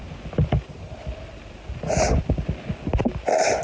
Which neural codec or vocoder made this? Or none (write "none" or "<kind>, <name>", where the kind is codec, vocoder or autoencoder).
vocoder, BigVGAN v2